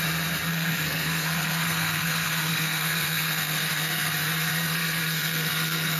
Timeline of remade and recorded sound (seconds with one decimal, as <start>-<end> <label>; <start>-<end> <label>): 0.0-0.5 recorded; 0.5-4.1 remade; 4.1-4.5 recorded; 4.5-6.0 remade